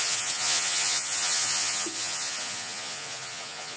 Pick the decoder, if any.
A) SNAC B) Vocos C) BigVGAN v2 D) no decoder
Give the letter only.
B